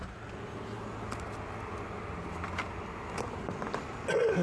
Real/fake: real